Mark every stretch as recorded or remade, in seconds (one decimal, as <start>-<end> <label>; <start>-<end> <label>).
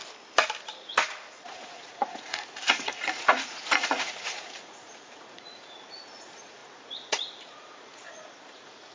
0.0-0.8 recorded; 0.8-8.9 remade